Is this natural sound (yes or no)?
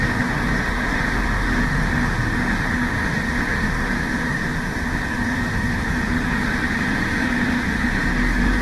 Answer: no